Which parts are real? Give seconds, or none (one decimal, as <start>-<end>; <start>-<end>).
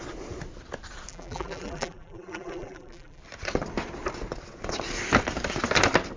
0.0-1.1; 3.2-6.2